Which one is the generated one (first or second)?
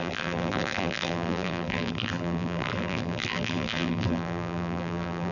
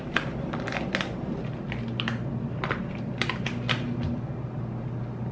first